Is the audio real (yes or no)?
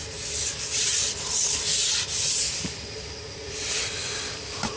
yes